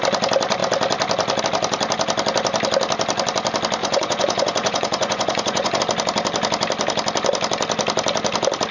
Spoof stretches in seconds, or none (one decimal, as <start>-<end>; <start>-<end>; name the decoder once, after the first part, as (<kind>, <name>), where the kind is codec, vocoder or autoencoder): 3.8-5.8 (vocoder, Vocos)